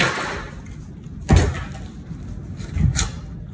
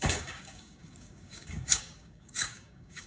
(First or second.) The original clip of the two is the first